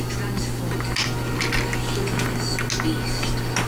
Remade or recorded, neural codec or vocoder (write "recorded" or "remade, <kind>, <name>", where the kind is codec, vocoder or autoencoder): recorded